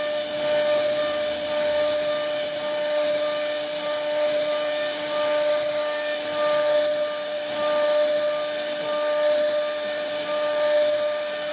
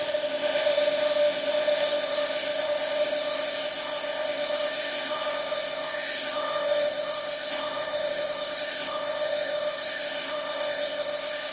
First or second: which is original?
first